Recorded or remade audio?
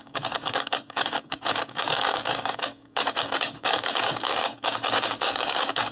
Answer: remade